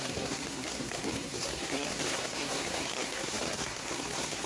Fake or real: fake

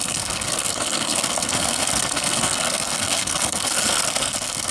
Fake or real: fake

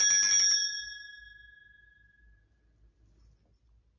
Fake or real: real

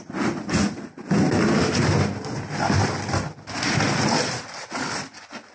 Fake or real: real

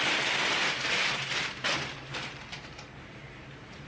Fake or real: fake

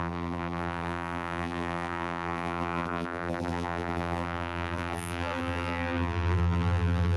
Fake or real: fake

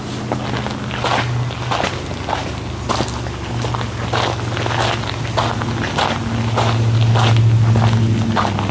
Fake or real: real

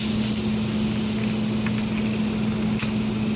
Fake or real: real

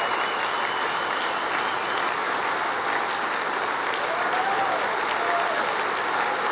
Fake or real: real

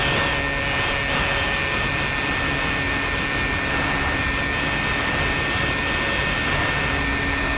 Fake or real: real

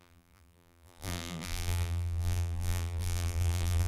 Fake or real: fake